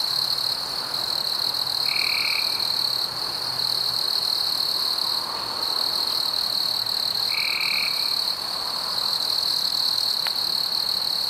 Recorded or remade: recorded